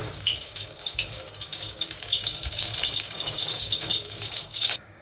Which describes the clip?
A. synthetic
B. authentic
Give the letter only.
A